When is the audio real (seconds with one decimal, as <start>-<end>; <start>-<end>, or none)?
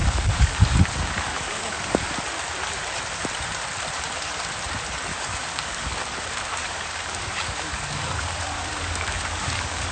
2.2-5.1